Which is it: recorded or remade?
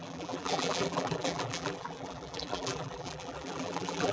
remade